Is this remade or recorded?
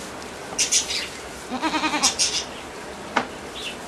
recorded